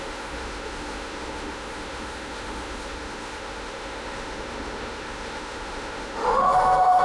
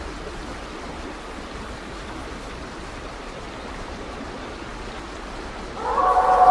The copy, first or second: first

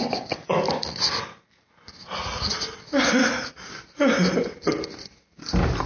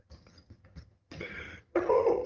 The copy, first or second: second